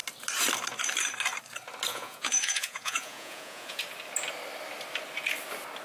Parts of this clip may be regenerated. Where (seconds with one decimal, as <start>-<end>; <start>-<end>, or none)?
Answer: 1.9-3.8